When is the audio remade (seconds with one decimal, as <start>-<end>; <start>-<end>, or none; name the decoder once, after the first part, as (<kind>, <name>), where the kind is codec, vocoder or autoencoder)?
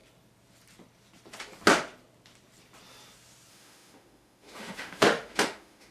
3.5-5.9 (autoencoder, DAC-VAE)